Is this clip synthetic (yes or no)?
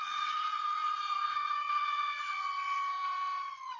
yes